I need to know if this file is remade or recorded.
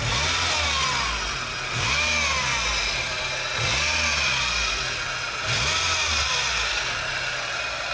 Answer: recorded